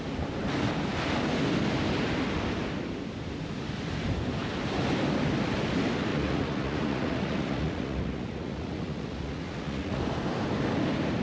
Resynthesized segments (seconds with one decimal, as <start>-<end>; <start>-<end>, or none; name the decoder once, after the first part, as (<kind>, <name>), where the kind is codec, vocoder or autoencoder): 6.1-10.0 (vocoder, Vocos)